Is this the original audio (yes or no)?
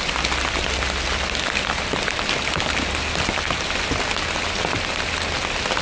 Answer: yes